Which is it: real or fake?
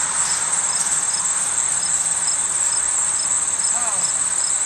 real